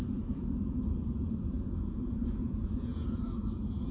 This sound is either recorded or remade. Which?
remade